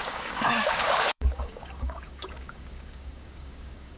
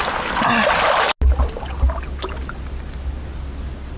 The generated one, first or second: first